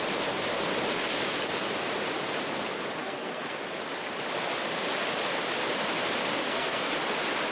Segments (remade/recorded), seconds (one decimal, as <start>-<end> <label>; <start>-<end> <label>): 0.0-3.0 recorded; 3.0-3.6 remade; 3.6-6.4 recorded; 6.4-6.9 remade; 6.9-7.5 recorded